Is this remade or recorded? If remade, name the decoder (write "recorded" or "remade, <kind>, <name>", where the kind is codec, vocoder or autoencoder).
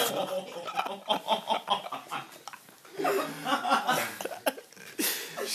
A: recorded